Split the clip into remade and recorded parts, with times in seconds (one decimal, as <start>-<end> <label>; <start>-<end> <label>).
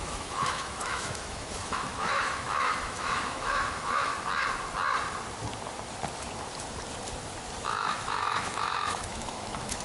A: 0.0-4.1 remade; 4.1-7.6 recorded; 7.6-9.8 remade